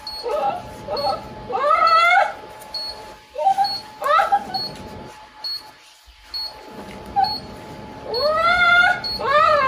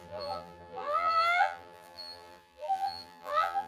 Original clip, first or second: first